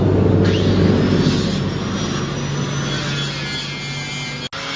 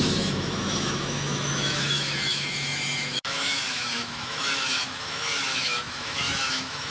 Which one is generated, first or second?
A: second